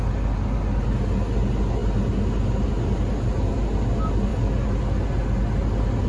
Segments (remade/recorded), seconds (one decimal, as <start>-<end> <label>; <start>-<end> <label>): 0.0-6.1 recorded